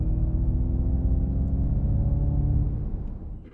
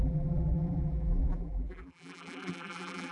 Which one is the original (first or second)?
first